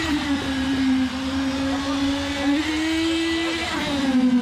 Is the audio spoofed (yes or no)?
no